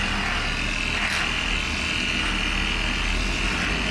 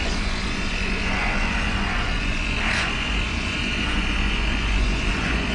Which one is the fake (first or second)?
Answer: second